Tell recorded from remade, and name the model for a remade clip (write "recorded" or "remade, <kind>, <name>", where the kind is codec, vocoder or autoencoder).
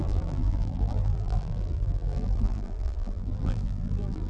remade, vocoder, BigVGAN v2